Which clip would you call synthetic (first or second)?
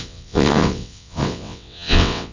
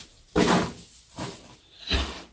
first